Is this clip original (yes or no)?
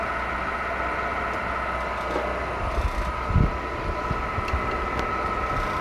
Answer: yes